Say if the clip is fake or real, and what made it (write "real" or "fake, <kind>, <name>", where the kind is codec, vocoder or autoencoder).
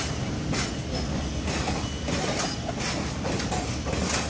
real